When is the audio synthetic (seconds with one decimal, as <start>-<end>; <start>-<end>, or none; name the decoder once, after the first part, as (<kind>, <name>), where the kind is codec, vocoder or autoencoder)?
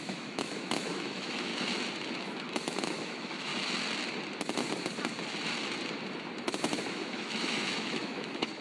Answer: 0.0-1.5 (autoencoder, DAC-VAE); 2.2-3.5; 6.9-8.6